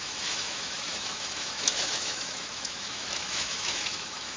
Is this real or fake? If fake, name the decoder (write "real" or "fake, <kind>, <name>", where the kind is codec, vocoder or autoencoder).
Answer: fake, autoencoder, DAC-VAE